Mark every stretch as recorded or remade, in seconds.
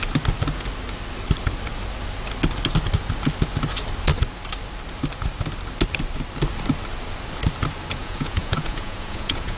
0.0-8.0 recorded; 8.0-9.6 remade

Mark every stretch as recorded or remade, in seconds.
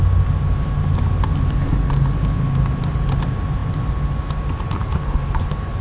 0.0-5.8 recorded